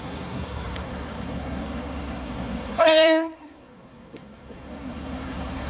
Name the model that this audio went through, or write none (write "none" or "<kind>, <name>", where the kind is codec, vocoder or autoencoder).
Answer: codec, SNAC